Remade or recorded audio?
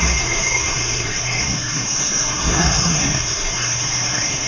remade